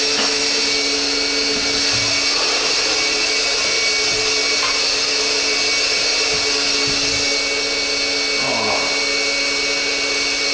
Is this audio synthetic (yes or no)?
no